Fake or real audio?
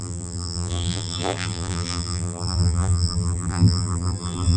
fake